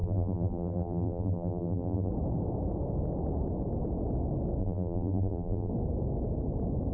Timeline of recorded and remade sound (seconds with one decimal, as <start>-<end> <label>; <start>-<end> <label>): 0.0-2.1 remade; 2.1-4.6 recorded; 4.6-5.7 remade; 5.7-6.9 recorded

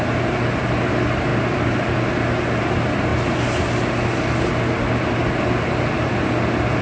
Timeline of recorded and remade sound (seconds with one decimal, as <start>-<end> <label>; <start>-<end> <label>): 0.0-6.8 recorded

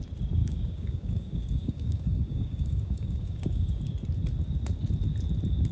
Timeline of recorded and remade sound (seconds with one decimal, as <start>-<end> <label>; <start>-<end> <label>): 0.0-0.4 recorded; 0.4-3.8 remade; 3.8-5.7 recorded

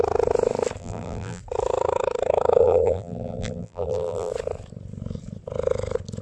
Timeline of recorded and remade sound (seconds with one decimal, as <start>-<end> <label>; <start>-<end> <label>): 0.0-0.8 recorded; 0.8-1.4 remade; 1.4-2.6 recorded; 2.6-4.3 remade; 4.3-6.2 recorded

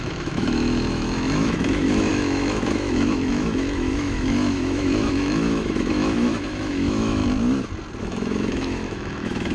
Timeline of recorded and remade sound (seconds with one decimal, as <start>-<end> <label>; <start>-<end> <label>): 0.0-7.2 remade; 7.2-8.0 recorded; 8.0-9.5 remade